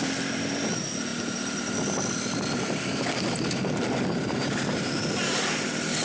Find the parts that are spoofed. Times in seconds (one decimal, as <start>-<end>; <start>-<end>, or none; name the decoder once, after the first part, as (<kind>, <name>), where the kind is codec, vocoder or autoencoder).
none